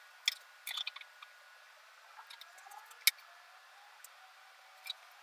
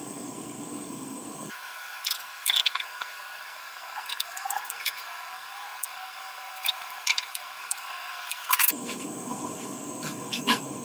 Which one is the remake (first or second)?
second